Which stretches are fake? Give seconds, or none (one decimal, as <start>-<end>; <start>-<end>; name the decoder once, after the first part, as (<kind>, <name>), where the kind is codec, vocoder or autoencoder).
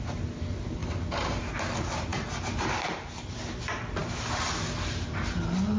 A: none